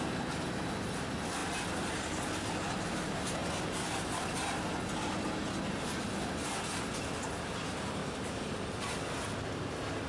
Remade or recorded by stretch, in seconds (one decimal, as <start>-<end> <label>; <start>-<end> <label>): 0.0-10.1 recorded